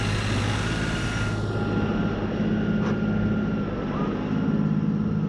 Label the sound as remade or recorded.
recorded